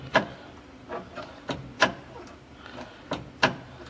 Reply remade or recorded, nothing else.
remade